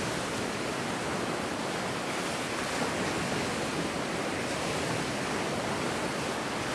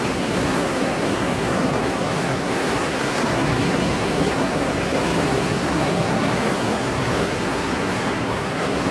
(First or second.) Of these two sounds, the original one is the first